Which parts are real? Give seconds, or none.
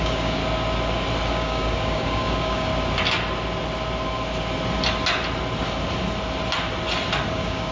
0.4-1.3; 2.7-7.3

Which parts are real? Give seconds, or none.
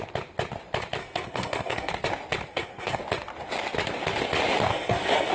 0.0-1.0; 1.9-2.5; 3.0-4.7